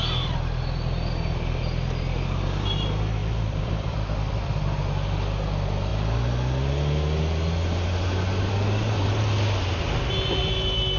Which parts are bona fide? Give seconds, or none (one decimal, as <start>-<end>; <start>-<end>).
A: 0.0-11.0